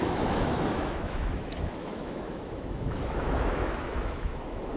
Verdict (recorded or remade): remade